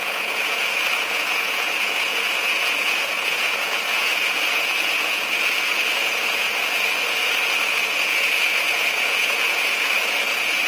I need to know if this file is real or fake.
fake